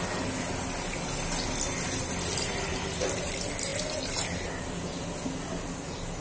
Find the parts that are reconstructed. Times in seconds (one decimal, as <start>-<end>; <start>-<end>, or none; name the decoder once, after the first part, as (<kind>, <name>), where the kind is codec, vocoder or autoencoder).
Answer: none